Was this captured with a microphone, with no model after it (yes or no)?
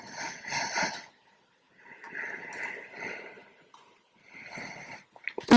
yes